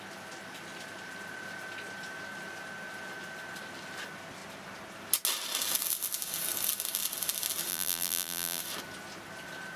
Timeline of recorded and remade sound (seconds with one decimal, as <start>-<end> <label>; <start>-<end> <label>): 0.0-7.7 recorded; 7.7-8.6 remade; 8.6-9.8 recorded